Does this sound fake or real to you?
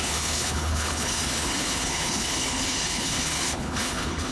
fake